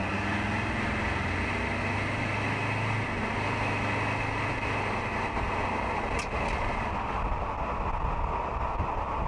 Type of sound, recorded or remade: recorded